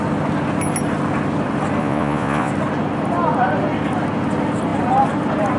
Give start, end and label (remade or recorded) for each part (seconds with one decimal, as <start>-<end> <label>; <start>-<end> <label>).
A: 0.0-1.8 recorded; 1.8-2.5 remade; 2.5-5.6 recorded

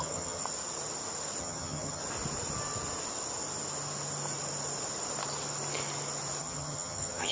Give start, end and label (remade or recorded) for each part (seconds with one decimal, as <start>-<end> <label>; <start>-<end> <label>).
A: 0.0-0.4 remade; 0.4-1.4 recorded; 1.4-2.0 remade; 2.0-6.4 recorded; 6.4-7.3 remade

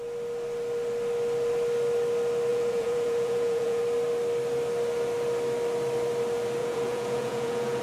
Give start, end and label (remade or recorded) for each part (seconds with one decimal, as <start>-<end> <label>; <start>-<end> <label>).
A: 0.0-2.5 recorded; 2.5-3.8 remade; 3.8-6.6 recorded; 6.6-7.8 remade

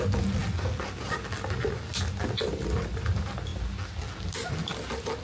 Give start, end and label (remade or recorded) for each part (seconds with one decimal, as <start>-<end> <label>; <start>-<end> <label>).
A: 0.0-5.2 recorded

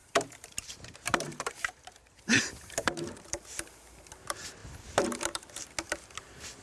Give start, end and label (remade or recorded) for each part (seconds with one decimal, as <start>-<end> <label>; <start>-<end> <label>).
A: 0.0-4.0 remade; 4.0-4.6 recorded; 4.6-5.6 remade; 5.6-6.6 recorded